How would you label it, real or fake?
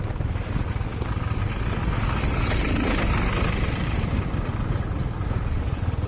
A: real